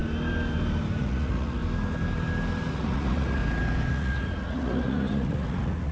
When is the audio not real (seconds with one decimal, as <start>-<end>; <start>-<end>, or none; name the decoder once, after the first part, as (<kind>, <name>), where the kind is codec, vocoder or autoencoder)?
1.0-1.6 (vocoder, Vocos); 2.7-3.4; 3.9-5.9